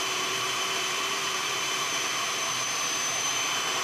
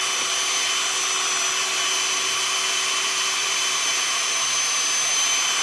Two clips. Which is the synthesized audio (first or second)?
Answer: first